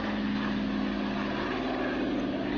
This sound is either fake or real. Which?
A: real